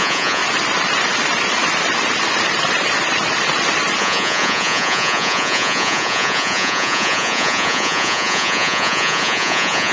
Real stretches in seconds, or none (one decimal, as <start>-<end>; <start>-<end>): 0.4-4.0